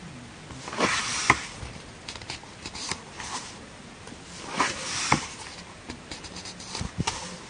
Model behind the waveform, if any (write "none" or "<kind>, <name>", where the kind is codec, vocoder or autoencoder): vocoder, BigVGAN v2